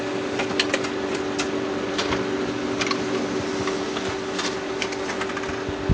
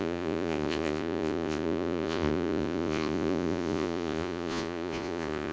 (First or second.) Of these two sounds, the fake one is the second